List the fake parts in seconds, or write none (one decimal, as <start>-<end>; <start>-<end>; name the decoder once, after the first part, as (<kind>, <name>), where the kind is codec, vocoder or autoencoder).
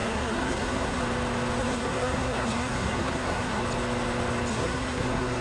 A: 0.0-1.0 (codec, SNAC); 1.6-3.6; 4.5-5.4